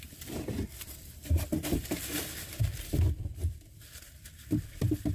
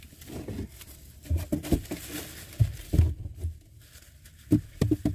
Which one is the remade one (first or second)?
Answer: first